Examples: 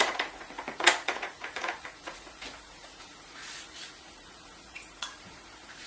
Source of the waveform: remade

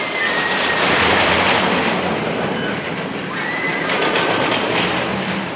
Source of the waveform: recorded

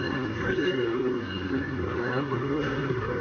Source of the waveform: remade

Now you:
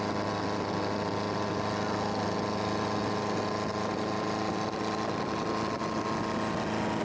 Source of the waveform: recorded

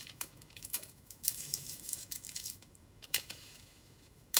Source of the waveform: remade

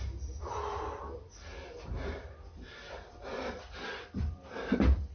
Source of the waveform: remade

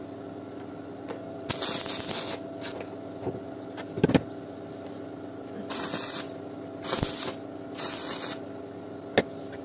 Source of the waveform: recorded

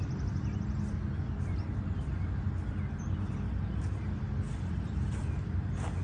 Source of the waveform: recorded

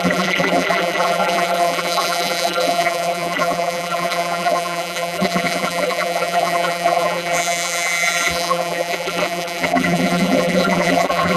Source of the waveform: remade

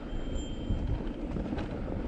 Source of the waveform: recorded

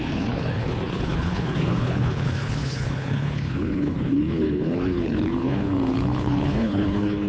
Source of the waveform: remade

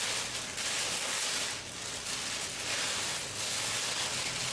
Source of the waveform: recorded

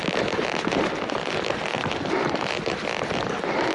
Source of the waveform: remade